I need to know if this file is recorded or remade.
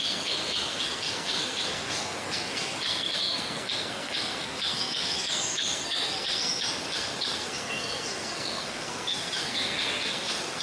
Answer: remade